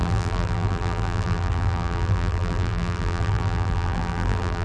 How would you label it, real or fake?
fake